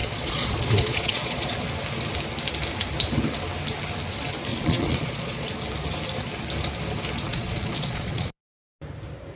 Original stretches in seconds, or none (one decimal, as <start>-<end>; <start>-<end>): 1.7-4.5; 5.5-7.3; 8.4-9.4

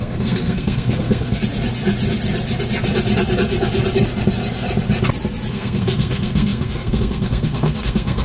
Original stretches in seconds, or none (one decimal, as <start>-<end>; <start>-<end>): 1.4-5.5

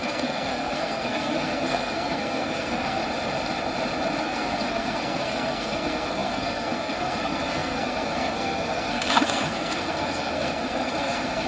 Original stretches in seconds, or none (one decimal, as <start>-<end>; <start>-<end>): 3.0-4.2

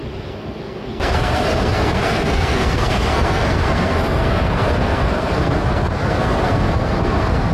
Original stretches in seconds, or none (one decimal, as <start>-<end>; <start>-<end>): none